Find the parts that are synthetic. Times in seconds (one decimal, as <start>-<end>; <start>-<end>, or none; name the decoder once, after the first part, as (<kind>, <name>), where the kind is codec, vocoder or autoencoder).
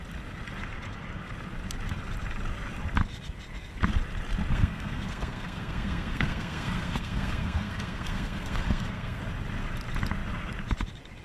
4.5-9.2 (codec, SNAC)